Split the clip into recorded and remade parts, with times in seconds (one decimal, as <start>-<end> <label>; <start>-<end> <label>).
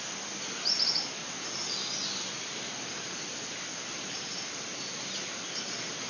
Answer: 0.0-3.7 recorded; 3.7-4.9 remade; 4.9-6.1 recorded